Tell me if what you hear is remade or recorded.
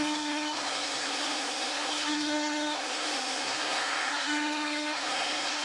remade